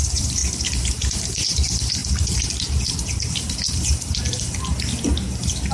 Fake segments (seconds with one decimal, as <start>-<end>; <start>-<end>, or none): 0.0-0.4; 0.9-2.0